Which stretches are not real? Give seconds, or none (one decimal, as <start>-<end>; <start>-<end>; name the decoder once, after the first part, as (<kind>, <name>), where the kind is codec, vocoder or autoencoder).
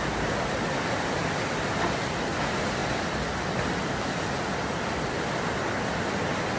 none